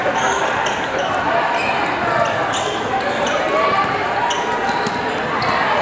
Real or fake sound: real